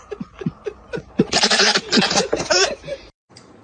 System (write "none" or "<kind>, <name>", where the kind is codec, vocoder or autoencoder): vocoder, BigVGAN v2